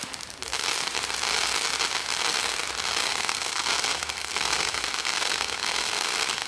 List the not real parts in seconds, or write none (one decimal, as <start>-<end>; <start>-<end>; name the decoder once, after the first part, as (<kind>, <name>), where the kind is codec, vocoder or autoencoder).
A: 3.1-6.5 (codec, SNAC)